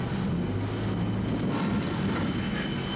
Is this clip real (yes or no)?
yes